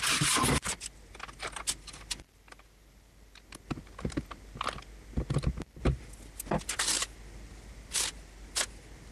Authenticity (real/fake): real